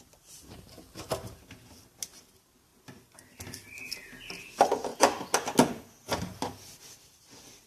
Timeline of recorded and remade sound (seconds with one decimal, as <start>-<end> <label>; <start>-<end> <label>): 0.0-7.7 recorded